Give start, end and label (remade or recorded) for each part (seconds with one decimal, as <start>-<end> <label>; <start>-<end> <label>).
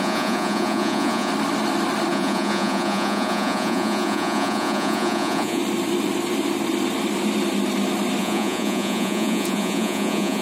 0.0-1.3 remade; 1.3-2.1 recorded; 2.1-5.6 remade; 5.6-8.2 recorded; 8.2-10.4 remade